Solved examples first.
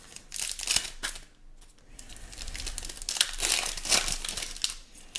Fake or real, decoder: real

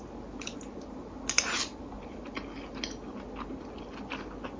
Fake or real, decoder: real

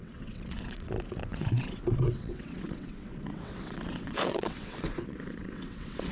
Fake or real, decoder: fake, vocoder, WaveNeXt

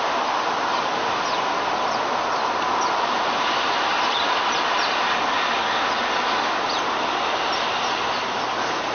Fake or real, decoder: real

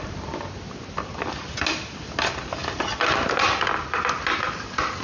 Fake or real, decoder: real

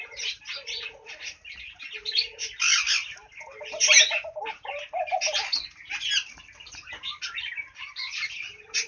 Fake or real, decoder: real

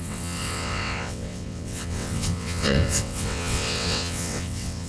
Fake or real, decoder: fake, vocoder, WaveNeXt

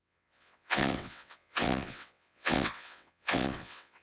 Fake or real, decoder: fake, vocoder, WaveNeXt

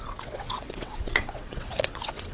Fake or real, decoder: fake, vocoder, WaveNeXt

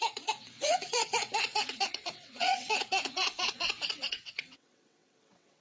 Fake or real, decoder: fake, vocoder, WaveNeXt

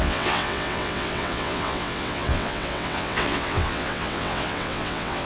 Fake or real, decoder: fake, vocoder, WaveNeXt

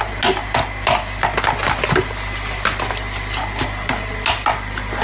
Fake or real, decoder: real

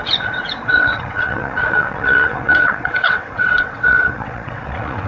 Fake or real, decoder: fake, vocoder, WaveNeXt